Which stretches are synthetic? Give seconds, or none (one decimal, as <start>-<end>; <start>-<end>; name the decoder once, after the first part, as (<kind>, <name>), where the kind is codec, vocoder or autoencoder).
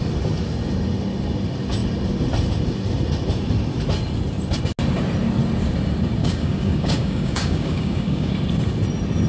6.2-8.3 (codec, DAC)